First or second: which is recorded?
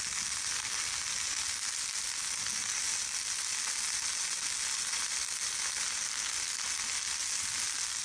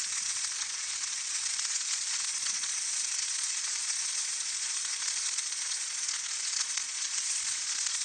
first